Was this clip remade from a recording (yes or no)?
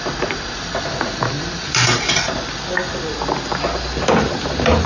no